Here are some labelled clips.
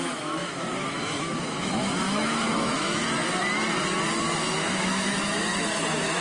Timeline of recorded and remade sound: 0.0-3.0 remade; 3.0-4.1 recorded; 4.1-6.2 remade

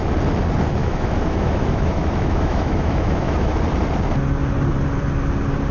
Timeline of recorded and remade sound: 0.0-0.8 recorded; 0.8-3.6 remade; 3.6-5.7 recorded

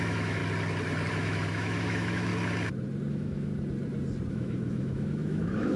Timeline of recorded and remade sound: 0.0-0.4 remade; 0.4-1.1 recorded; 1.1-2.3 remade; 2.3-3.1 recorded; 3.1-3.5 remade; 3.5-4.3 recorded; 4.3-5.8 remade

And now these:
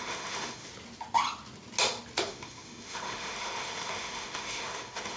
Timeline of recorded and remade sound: 0.0-0.7 remade; 0.7-2.2 recorded; 2.2-5.2 remade

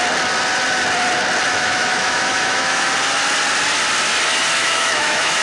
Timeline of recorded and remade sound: 0.0-1.5 recorded; 1.5-2.9 remade; 2.9-4.6 recorded; 4.6-5.4 remade